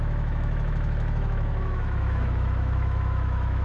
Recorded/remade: remade